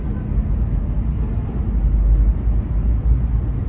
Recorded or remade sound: recorded